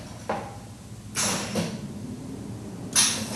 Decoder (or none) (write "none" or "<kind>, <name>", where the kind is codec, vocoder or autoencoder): none